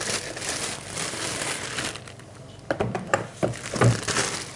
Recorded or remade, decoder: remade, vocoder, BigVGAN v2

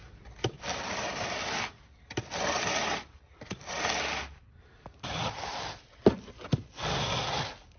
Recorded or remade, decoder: recorded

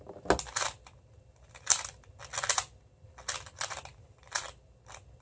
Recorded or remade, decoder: recorded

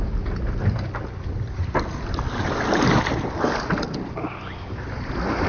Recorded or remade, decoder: recorded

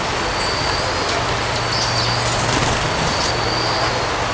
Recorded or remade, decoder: recorded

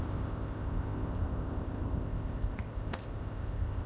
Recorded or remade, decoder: remade, codec, ZipCodec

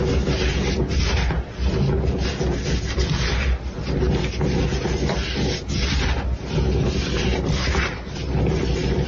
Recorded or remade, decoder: recorded